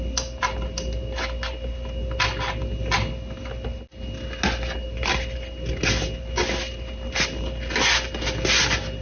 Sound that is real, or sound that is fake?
real